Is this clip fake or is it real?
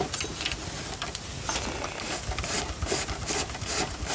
real